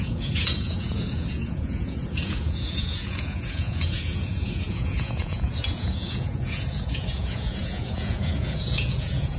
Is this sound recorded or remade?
remade